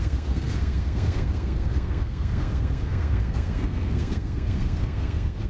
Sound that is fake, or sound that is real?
fake